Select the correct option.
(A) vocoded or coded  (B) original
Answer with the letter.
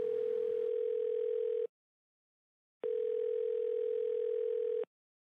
B